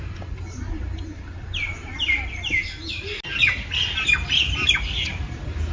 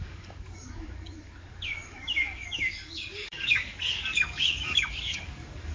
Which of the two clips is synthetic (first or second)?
second